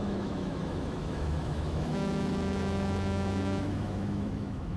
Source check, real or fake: fake